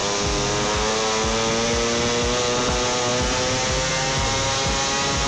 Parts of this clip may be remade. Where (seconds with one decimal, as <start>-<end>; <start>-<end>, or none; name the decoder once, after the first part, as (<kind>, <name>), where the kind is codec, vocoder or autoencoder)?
none